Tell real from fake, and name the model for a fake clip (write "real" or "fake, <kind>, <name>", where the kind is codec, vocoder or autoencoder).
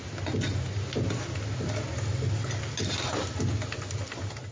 real